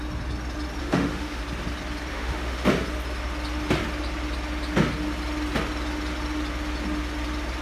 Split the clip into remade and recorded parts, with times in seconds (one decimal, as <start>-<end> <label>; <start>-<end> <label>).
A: 0.0-0.8 recorded; 0.8-1.4 remade; 1.4-2.1 recorded; 2.1-2.7 remade; 2.7-7.6 recorded